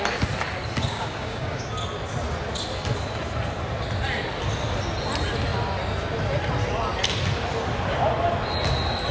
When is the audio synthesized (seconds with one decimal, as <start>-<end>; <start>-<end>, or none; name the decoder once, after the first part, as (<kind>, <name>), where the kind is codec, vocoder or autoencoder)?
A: 0.9-1.7 (codec, DAC)